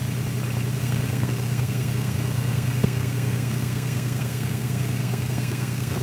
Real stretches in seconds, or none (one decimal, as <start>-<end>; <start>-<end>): 0.0-0.8